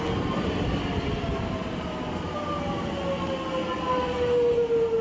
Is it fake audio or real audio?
real